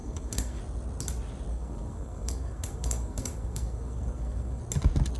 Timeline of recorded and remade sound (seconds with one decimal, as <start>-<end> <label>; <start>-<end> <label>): 0.0-0.6 remade; 0.6-1.5 recorded; 1.5-4.6 remade; 4.6-5.2 recorded